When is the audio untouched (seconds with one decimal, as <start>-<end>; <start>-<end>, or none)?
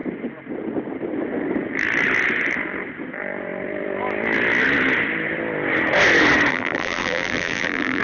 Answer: 0.0-6.5